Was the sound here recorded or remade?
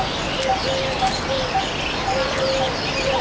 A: recorded